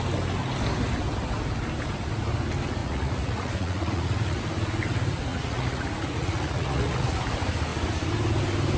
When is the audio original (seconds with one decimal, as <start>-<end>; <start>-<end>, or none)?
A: 0.0-2.8; 4.4-5.3; 7.2-8.8